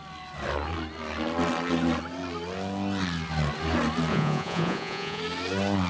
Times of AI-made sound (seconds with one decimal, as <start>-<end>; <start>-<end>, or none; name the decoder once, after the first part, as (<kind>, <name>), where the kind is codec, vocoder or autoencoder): 4.1-5.2 (vocoder, Vocos)